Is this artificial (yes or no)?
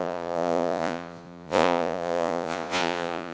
yes